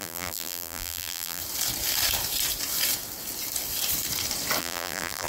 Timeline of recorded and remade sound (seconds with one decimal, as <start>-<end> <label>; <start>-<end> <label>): 0.0-1.4 remade; 1.4-4.6 recorded; 4.6-5.3 remade